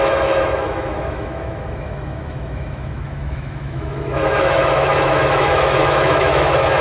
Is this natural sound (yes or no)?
no